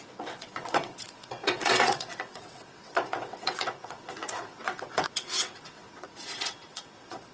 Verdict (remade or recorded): remade